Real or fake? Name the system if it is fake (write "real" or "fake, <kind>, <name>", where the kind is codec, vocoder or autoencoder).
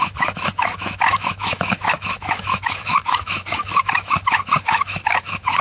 fake, autoencoder, DAC-VAE